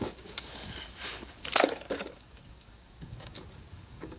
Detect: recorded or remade remade